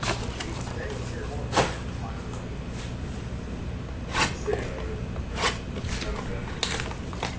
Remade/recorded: recorded